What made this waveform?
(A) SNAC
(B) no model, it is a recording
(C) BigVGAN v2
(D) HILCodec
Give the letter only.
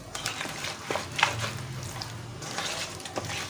B